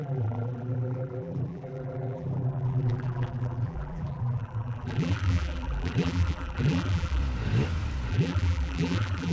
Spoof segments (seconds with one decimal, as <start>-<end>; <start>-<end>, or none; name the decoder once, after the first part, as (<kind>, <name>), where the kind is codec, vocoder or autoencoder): 0.0-7.2 (vocoder, BigVGAN v2); 8.1-9.3